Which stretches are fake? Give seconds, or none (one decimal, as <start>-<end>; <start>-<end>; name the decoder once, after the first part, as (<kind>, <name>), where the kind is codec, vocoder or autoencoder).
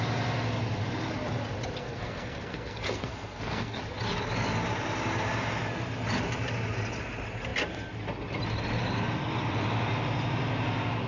1.8-3.8 (codec, SNAC)